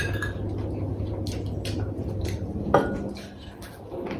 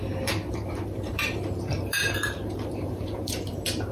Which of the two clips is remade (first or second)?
second